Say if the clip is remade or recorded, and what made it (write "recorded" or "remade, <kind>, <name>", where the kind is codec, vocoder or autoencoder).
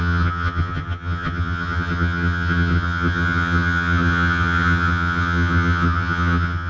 remade, vocoder, HiFi-GAN